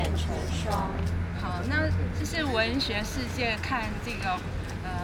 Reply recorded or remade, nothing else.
recorded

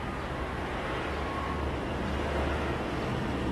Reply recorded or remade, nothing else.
recorded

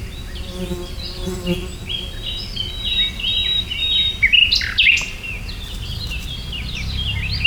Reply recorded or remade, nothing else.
recorded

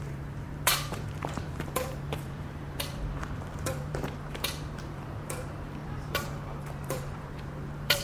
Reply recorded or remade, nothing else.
remade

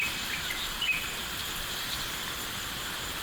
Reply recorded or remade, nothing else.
remade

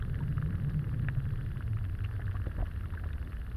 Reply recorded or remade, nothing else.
recorded